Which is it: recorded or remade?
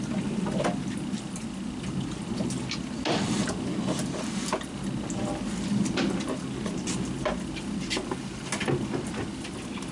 recorded